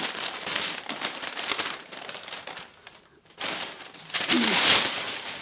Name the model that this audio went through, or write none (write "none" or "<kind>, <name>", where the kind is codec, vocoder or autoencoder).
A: vocoder, BigVGAN v2